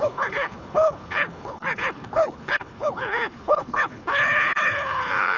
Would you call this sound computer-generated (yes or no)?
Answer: yes